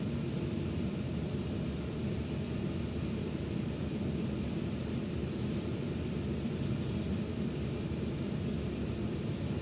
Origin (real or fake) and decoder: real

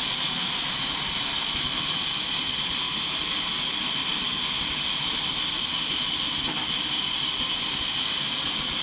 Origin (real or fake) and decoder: real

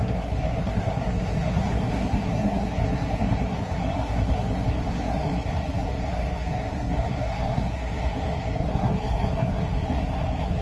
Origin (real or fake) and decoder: fake, codec, SNAC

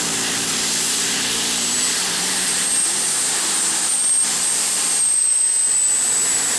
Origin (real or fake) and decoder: fake, vocoder, BigVGAN v2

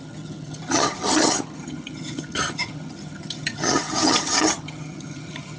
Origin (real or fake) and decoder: fake, vocoder, HiFi-GAN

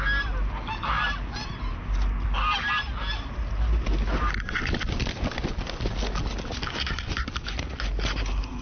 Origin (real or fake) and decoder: real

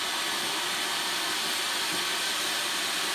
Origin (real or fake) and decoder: real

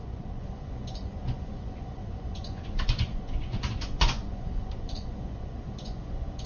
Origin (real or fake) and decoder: fake, vocoder, Vocos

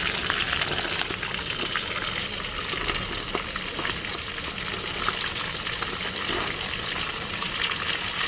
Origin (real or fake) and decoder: real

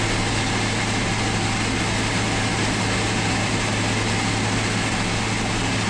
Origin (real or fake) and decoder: real